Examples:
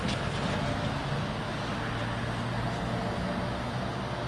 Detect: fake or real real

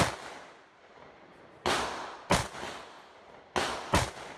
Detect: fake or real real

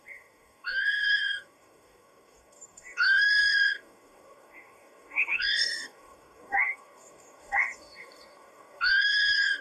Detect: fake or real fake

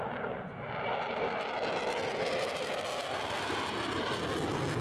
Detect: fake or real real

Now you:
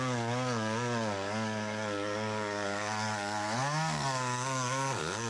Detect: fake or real fake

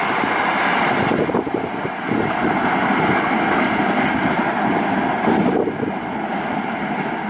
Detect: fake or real real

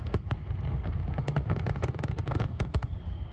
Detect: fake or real fake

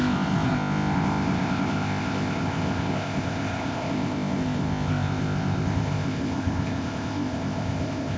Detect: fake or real fake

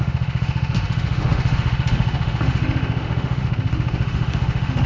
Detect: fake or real fake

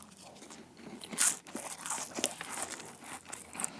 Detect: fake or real real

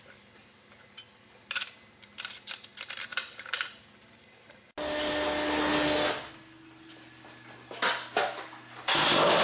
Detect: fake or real real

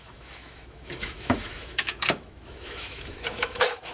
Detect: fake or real fake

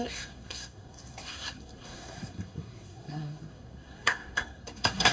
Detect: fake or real fake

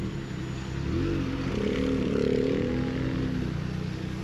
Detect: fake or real real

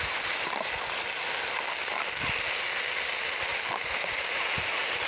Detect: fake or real real